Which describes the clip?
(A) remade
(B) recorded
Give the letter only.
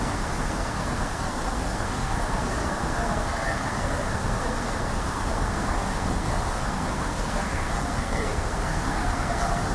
A